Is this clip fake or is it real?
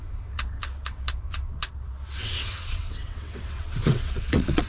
fake